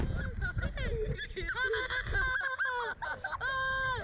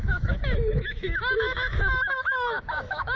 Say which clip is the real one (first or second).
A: first